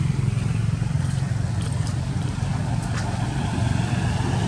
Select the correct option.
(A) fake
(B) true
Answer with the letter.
B